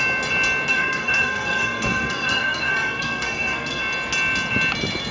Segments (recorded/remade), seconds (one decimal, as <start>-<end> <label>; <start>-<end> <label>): 0.0-0.7 recorded; 0.7-3.8 remade; 3.8-5.1 recorded